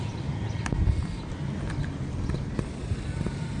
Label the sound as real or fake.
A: real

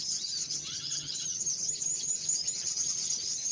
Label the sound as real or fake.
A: fake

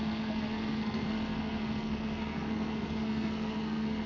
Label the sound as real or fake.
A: fake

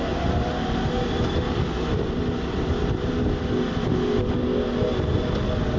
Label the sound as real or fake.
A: real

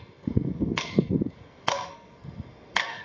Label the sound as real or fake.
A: fake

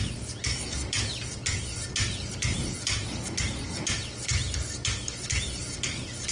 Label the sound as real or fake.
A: real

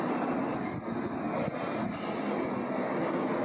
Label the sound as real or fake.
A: real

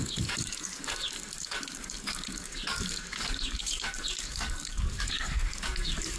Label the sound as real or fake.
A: fake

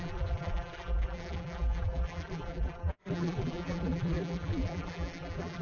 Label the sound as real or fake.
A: fake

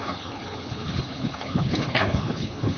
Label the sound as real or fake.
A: fake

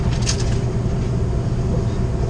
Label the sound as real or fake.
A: real